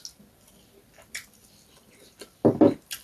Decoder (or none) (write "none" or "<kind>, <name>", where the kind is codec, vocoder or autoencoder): none